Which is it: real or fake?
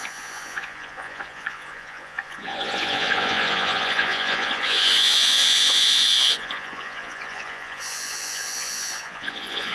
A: fake